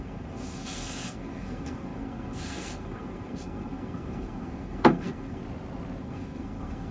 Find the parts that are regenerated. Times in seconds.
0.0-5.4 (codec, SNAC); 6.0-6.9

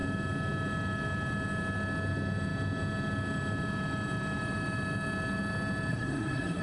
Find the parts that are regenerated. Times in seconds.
5.9-6.6 (codec, SNAC)

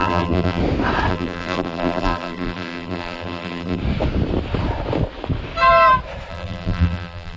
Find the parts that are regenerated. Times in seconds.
0.0-0.6 (vocoder, BigVGAN v2); 1.1-3.8; 6.3-7.4

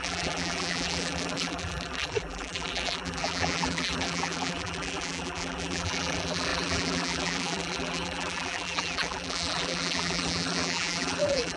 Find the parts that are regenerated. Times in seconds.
0.0-11.6 (vocoder, BigVGAN v2)

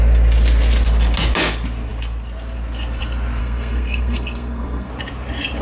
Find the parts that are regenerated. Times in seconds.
3.4-4.9 (codec, SNAC)

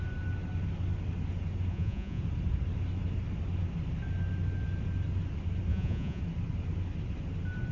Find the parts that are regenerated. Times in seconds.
1.7-2.2 (vocoder, Vocos); 5.7-6.2